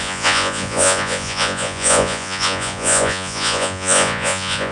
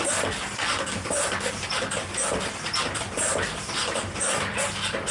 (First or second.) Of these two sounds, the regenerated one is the first